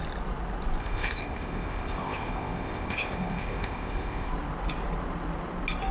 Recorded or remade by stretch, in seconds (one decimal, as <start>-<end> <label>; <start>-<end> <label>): 0.0-0.8 recorded; 0.8-4.3 remade; 4.3-5.9 recorded